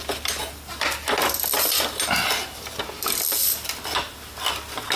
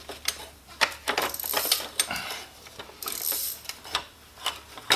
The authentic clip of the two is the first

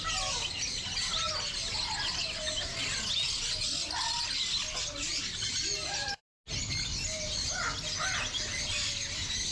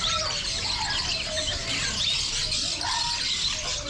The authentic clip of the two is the first